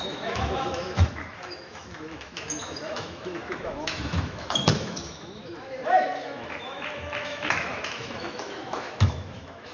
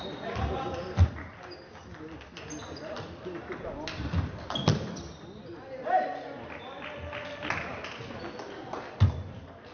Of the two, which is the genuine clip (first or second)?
second